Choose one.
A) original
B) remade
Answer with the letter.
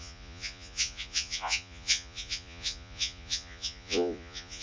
B